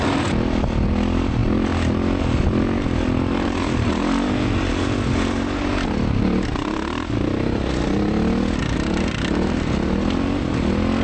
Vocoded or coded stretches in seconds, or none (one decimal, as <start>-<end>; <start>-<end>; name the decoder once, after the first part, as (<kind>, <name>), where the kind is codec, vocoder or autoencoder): none